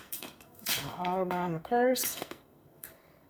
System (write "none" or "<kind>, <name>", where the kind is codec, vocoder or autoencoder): codec, SNAC